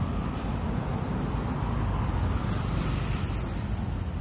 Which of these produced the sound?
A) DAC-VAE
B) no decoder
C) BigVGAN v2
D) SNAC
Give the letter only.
B